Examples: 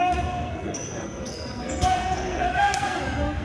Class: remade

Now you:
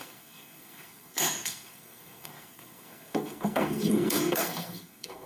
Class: remade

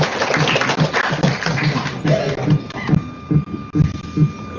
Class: recorded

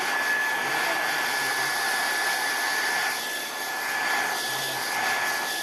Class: recorded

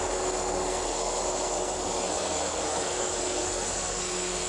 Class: remade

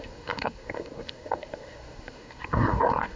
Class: remade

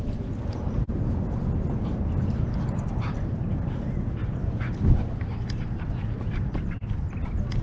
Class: recorded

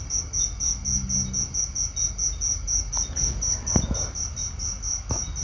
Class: recorded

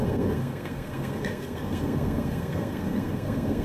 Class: remade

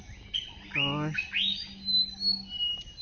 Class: recorded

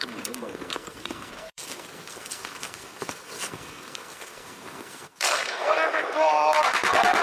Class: remade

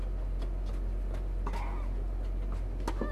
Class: recorded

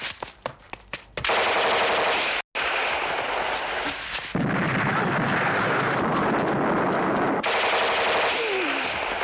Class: recorded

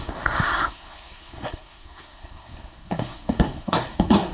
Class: remade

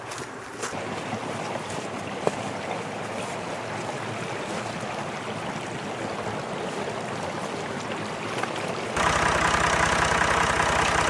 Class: recorded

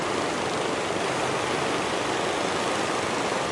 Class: recorded